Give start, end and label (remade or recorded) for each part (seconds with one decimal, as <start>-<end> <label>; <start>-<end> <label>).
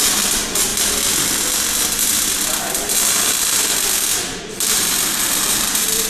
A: 0.0-0.7 remade; 0.7-4.4 recorded; 4.4-6.1 remade